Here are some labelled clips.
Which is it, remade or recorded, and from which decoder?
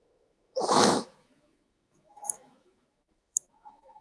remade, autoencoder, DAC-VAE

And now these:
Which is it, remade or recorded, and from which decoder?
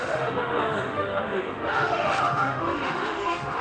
remade, autoencoder, DAC-VAE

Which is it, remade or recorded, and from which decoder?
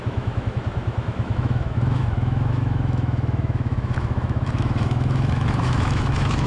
remade, autoencoder, DAC-VAE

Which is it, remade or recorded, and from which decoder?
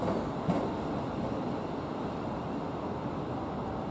recorded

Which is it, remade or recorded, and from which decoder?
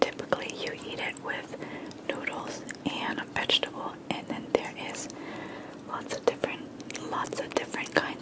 recorded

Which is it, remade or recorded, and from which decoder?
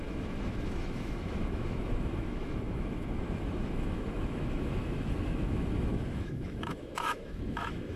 remade, autoencoder, DAC-VAE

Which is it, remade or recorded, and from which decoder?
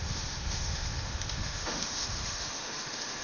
remade, autoencoder, DAC-VAE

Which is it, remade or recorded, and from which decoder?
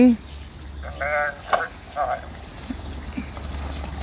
recorded